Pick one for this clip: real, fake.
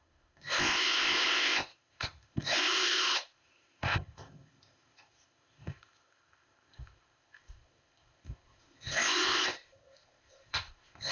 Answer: fake